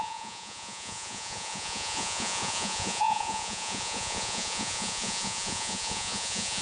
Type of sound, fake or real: fake